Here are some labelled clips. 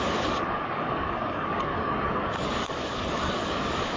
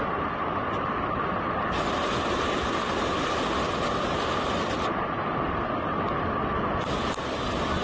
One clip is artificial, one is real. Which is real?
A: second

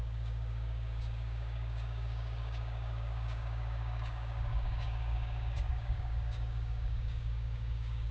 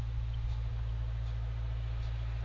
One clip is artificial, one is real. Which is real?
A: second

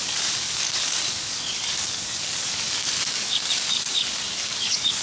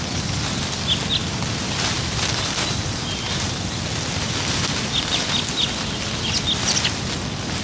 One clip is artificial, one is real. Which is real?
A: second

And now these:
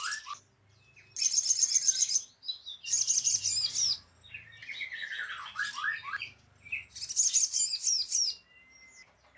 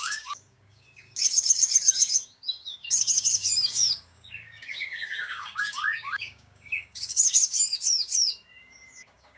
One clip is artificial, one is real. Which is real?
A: first